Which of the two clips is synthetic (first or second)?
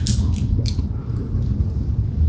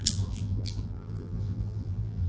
second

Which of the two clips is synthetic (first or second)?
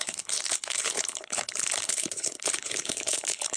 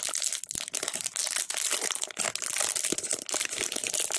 first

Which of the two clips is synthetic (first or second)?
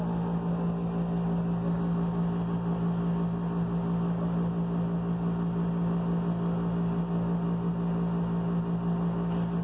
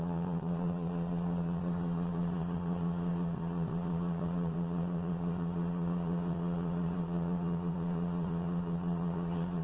second